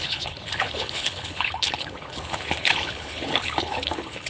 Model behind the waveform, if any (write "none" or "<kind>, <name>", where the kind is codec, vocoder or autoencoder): codec, HILCodec